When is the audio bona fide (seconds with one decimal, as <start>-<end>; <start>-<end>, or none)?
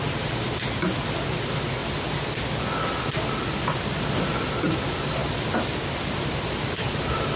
1.8-4.6